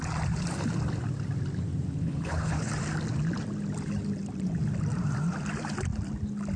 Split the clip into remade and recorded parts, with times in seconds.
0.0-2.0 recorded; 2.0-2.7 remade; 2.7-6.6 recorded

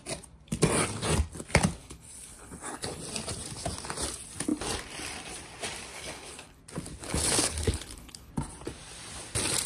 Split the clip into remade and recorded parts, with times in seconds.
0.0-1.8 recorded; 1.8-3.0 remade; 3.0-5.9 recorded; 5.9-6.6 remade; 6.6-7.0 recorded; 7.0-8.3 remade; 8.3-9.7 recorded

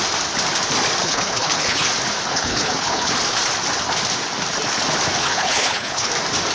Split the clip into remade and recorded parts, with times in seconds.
0.0-1.0 recorded; 1.0-1.9 remade; 1.9-2.3 recorded; 2.3-3.1 remade; 3.1-5.2 recorded; 5.2-6.1 remade; 6.1-6.5 recorded

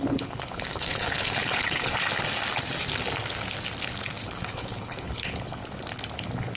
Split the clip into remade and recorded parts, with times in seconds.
0.0-1.9 remade; 1.9-4.2 recorded; 4.2-5.6 remade; 5.6-6.6 recorded